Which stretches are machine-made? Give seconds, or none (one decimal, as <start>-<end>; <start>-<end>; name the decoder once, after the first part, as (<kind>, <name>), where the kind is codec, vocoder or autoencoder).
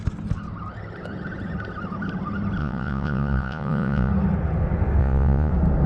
2.6-4.1 (vocoder, Vocos); 5.0-5.5